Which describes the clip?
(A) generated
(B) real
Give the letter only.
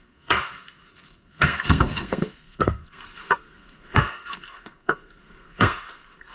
A